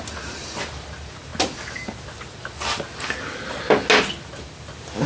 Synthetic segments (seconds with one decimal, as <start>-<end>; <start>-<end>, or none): none